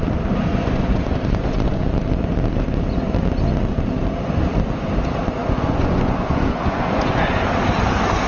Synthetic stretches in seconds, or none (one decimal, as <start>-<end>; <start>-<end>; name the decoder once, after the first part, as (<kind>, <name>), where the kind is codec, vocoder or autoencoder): 0.5-1.8 (vocoder, Vocos); 5.4-7.4